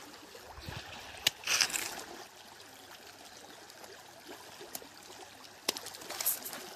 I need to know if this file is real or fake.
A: real